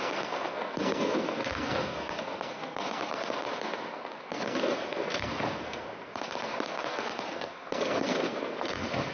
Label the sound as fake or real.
fake